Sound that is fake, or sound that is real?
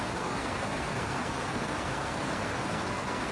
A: fake